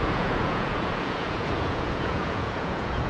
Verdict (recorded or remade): remade